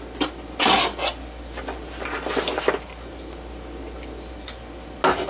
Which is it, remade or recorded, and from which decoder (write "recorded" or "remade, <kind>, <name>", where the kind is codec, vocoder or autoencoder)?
recorded